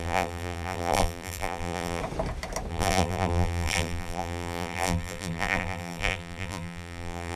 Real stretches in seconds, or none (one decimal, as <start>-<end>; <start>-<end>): 2.0-2.7